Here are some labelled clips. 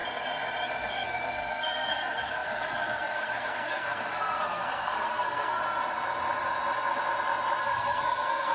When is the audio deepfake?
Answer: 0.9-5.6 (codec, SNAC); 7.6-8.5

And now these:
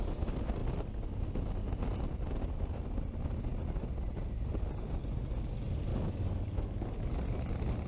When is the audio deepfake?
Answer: 5.9-7.1 (codec, DAC)

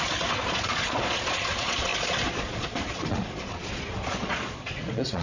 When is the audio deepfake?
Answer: 0.0-5.2 (vocoder, Vocos)

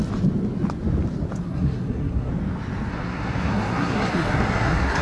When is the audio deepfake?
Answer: 1.4-2.3 (codec, SNAC); 2.9-5.0